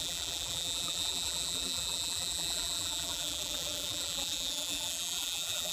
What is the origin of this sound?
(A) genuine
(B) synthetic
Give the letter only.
B